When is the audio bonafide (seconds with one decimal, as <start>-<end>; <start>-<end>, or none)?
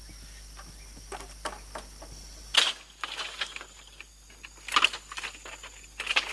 0.0-6.3